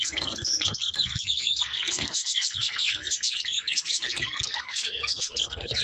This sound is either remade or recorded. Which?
remade